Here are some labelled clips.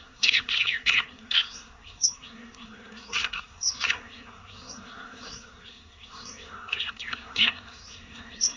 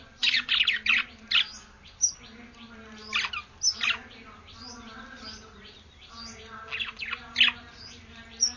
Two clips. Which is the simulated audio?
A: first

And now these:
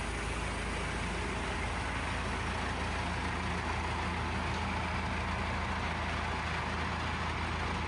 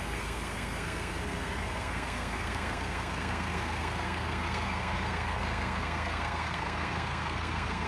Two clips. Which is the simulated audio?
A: second